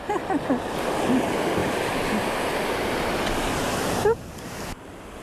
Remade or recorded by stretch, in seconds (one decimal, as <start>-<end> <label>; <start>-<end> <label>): 0.0-5.2 recorded